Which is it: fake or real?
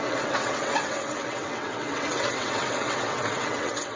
fake